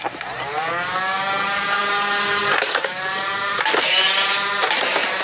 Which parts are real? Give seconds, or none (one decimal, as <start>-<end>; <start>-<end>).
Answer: 0.0-0.5; 3.6-5.2